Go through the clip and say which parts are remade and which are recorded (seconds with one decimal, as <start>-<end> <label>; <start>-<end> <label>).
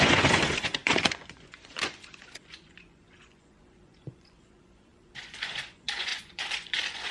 0.0-7.1 remade